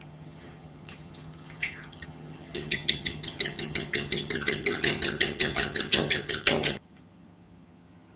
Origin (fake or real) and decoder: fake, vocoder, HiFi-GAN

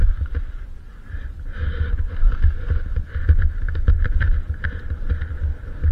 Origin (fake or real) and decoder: real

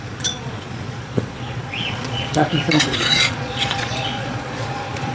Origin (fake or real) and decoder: fake, vocoder, Vocos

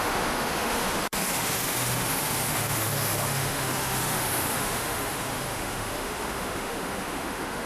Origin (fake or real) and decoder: fake, autoencoder, DAC-VAE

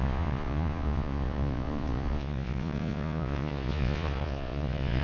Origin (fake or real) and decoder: fake, vocoder, Vocos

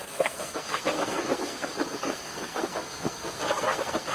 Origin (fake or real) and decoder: fake, codec, SNAC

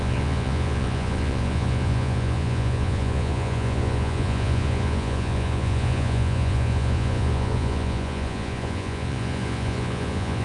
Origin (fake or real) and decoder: fake, vocoder, Vocos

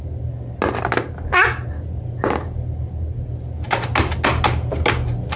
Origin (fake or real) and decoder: real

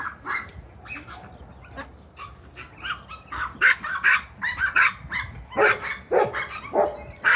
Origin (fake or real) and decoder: real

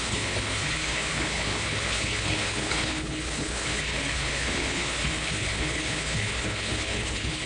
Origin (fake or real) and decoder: fake, codec, HILCodec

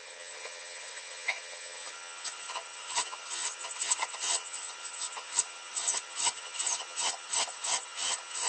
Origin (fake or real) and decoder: fake, vocoder, HiFi-GAN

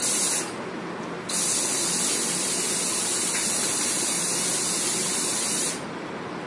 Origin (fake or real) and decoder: real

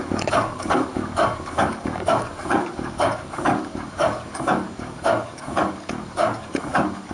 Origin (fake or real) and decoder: fake, codec, DAC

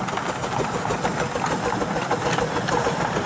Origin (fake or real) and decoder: real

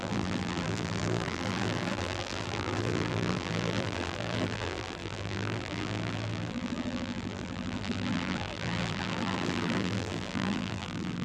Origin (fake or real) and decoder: fake, vocoder, BigVGAN v2